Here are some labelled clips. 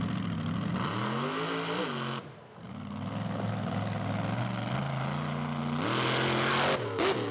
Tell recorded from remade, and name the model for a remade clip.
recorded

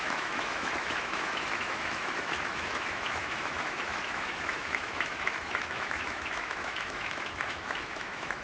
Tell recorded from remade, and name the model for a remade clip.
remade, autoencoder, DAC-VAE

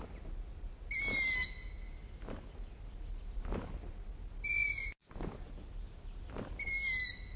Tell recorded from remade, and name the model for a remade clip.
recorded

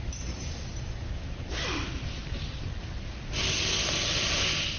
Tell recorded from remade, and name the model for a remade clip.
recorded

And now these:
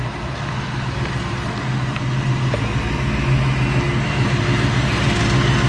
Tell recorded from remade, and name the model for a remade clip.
recorded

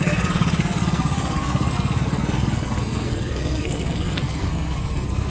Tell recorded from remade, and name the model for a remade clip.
remade, codec, SNAC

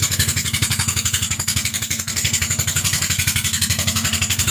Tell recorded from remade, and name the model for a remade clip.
remade, codec, SNAC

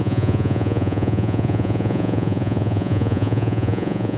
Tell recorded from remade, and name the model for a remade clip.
remade, vocoder, Vocos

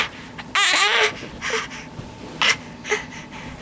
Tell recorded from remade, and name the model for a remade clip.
recorded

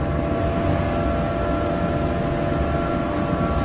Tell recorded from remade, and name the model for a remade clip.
recorded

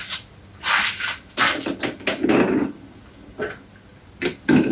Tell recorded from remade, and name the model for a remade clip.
recorded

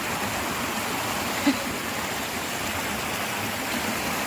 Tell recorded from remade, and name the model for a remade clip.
recorded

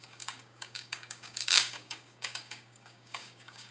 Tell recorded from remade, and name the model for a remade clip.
remade, codec, DAC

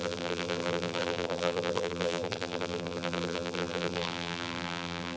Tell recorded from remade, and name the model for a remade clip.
remade, vocoder, BigVGAN v2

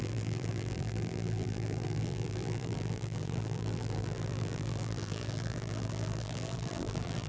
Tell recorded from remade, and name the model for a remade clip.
remade, vocoder, BigVGAN v2